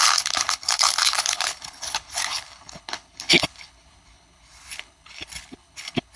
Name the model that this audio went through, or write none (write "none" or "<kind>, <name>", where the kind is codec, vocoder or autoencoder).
codec, HILCodec